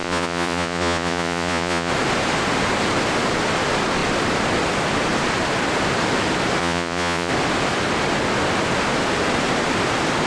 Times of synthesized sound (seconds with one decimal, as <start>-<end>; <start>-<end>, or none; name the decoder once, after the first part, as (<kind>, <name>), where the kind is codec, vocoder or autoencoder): 0.0-1.9 (vocoder, Vocos); 6.6-7.3